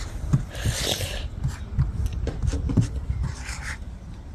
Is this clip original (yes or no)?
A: yes